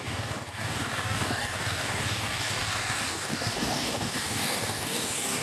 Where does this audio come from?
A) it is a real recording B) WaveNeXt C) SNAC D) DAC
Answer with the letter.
D